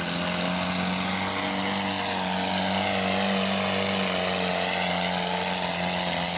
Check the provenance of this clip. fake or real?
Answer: real